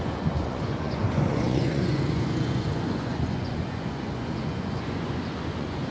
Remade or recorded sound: remade